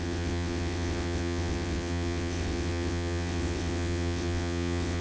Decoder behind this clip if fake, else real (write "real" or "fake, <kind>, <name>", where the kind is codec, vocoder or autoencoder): fake, vocoder, WaveNeXt